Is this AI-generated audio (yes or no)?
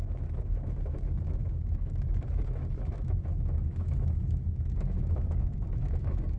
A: yes